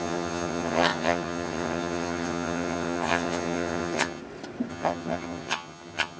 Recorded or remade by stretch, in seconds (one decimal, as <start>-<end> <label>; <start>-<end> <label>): 0.0-4.2 remade; 4.2-4.7 recorded; 4.7-6.2 remade